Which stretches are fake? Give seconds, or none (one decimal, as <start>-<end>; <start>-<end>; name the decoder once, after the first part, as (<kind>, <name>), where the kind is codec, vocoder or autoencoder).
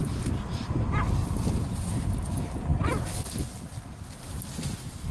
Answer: none